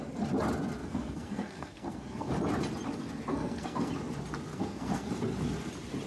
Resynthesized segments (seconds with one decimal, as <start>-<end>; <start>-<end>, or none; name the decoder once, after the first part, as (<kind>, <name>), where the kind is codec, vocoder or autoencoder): 0.8-2.3 (codec, SNAC); 3.3-3.9; 4.5-5.1